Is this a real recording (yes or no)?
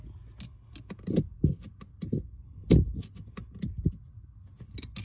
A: yes